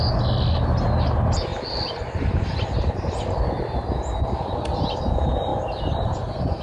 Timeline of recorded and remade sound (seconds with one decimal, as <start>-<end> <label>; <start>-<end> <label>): 0.0-1.5 recorded; 1.5-4.9 remade; 4.9-6.6 recorded